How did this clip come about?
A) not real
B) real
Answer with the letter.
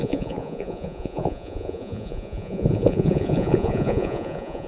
A